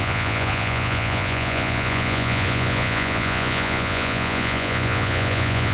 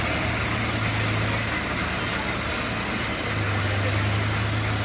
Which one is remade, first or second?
first